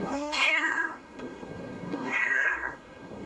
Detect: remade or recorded remade